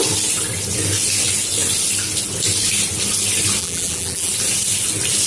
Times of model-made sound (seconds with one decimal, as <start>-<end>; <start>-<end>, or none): 3.6-4.3